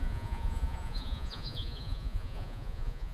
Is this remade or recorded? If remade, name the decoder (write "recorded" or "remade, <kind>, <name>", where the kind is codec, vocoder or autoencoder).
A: remade, vocoder, Vocos